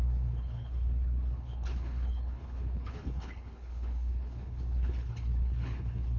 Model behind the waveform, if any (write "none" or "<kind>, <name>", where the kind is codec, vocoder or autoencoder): codec, HILCodec